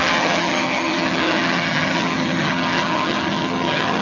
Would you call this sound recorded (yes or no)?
no